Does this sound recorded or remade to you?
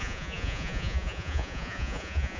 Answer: remade